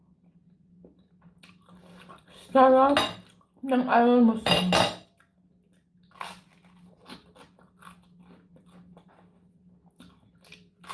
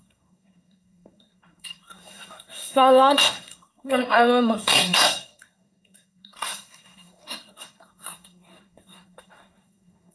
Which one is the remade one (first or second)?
second